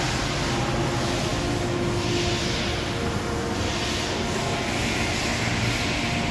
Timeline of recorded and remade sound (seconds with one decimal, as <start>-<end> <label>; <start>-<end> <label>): 0.0-6.3 recorded